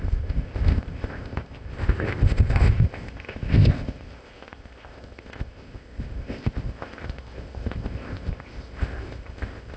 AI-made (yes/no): yes